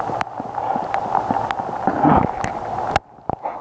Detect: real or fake real